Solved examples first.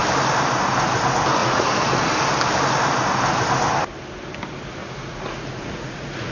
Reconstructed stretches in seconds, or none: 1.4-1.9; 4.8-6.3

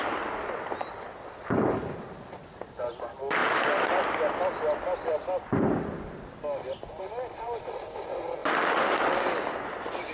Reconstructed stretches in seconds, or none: none

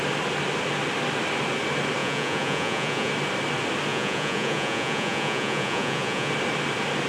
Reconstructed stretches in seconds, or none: 2.0-3.1; 3.9-6.3

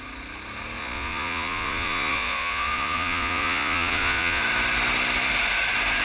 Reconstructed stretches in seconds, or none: 0.8-4.4

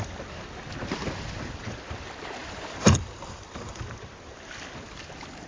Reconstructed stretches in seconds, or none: none